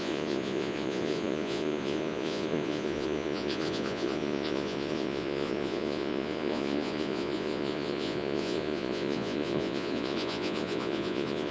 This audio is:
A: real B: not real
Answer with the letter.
B